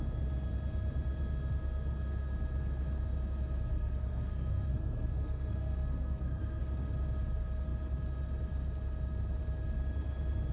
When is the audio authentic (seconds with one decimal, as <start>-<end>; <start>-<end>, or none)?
0.0-3.7; 6.6-10.5